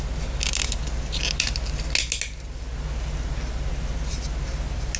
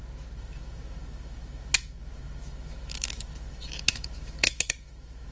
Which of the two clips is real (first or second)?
first